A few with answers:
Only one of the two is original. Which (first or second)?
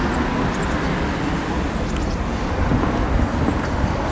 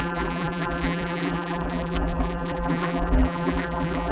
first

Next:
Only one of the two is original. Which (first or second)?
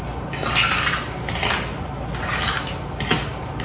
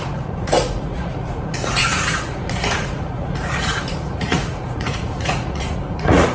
first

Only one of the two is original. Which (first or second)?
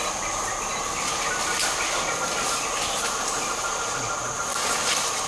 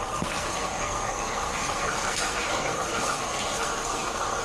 first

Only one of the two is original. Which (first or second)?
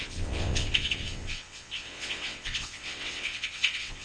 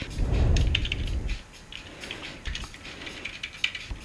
second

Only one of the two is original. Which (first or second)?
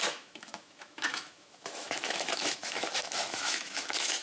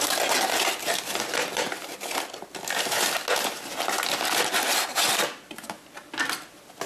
second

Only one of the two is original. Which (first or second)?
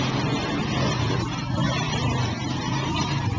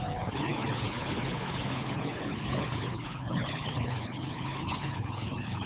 first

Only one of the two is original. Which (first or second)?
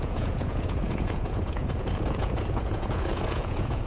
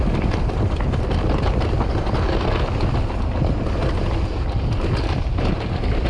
second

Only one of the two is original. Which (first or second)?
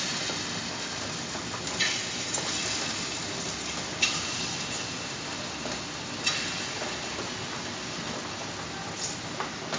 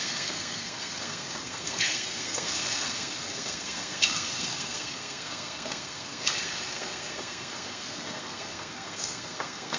first